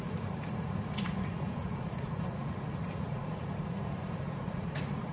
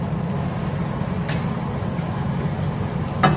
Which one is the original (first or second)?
second